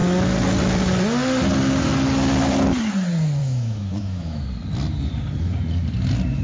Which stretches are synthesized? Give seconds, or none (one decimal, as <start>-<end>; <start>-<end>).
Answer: 3.4-4.4